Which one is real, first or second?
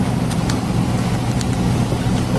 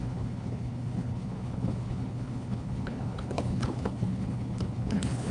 first